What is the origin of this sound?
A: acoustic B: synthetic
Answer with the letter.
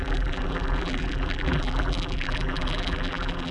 B